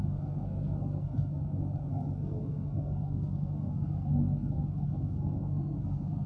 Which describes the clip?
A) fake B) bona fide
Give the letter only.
A